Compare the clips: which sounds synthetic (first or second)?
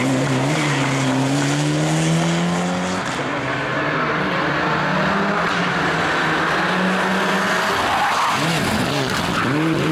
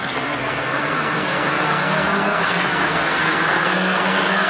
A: second